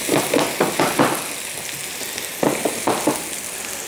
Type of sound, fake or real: real